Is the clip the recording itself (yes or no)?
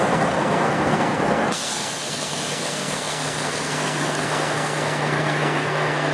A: no